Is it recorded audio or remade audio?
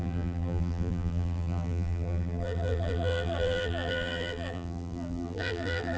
remade